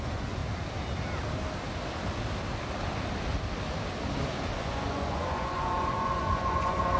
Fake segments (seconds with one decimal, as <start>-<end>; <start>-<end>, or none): 0.0-0.4; 4.6-7.0